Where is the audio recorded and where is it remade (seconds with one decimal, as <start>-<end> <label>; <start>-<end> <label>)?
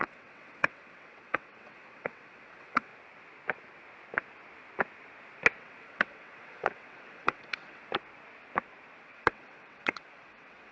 0.0-2.9 remade; 2.9-5.6 recorded; 5.6-7.9 remade; 7.9-9.0 recorded; 9.0-10.7 remade